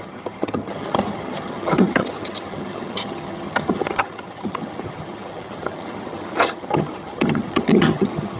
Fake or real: fake